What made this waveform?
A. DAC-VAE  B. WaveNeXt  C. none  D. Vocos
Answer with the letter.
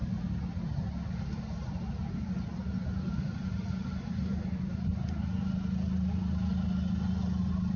C